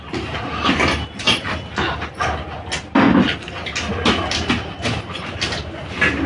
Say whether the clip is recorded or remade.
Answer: recorded